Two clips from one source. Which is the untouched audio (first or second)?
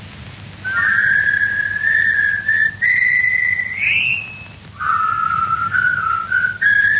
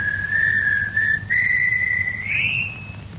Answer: first